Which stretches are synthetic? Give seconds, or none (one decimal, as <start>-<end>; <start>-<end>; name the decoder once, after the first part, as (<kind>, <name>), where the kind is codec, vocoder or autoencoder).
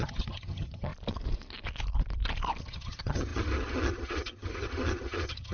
0.0-0.9 (vocoder, HiFi-GAN); 2.6-5.5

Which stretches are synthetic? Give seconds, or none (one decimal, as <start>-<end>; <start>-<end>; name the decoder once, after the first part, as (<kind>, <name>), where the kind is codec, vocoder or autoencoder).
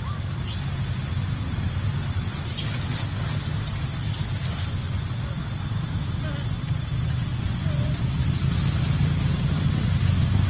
4.5-5.4 (vocoder, Vocos); 7.3-8.0